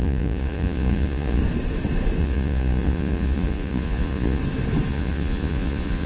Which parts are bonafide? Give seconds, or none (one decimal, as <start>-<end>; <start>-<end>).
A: 1.4-2.2; 4.4-4.9